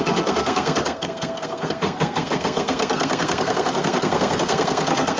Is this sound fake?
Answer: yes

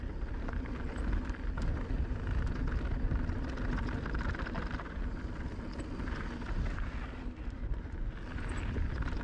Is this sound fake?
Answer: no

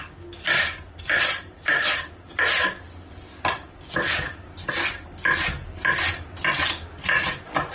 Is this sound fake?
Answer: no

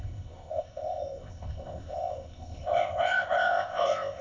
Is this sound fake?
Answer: yes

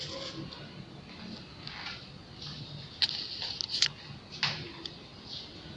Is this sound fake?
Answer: no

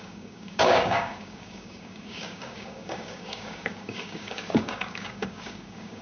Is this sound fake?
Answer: yes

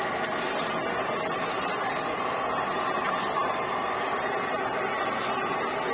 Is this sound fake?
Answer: no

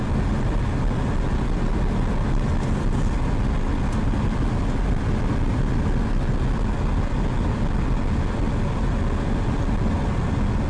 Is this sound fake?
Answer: no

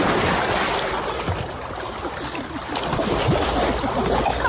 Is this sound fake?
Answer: no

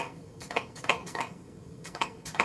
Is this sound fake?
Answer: yes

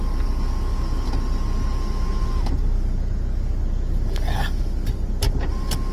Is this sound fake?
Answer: no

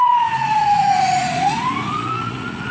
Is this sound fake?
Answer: yes